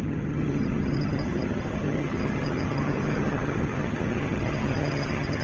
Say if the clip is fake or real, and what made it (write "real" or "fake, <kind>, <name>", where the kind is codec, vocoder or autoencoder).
fake, vocoder, HiFi-GAN